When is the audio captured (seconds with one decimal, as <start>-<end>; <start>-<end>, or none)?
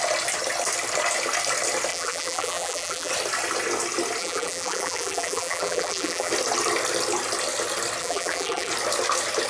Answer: 0.0-1.9; 3.1-4.2; 6.3-8.0; 8.7-9.5